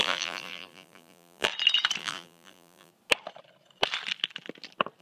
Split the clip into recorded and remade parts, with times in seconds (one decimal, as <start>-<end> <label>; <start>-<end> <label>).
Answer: 0.0-1.5 remade; 1.5-2.0 recorded; 2.0-2.9 remade; 2.9-5.0 recorded